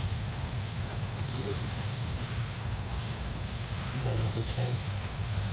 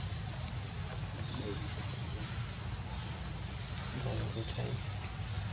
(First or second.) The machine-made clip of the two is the first